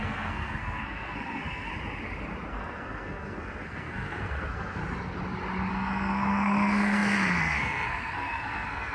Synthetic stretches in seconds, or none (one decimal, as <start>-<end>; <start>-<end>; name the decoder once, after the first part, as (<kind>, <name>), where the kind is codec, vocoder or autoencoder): 0.0-1.7 (codec, SNAC); 2.5-4.8; 5.7-8.9